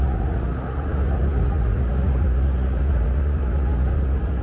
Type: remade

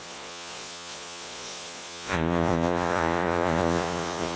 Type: remade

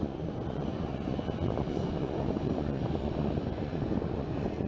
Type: remade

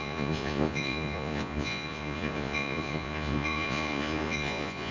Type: remade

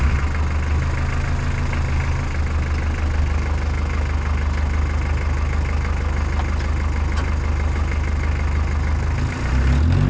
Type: recorded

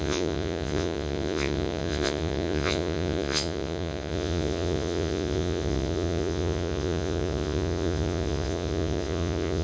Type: remade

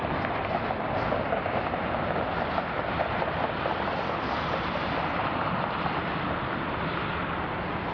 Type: recorded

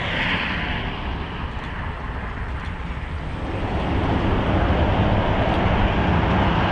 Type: recorded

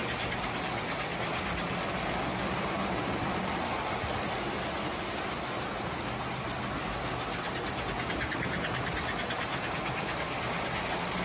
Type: recorded